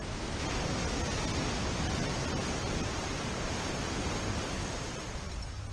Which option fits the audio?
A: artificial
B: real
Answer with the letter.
B